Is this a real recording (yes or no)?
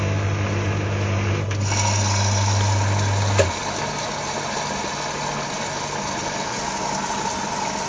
yes